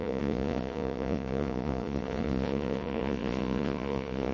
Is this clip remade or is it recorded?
remade